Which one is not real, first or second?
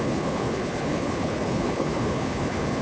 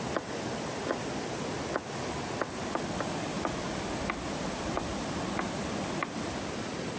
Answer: first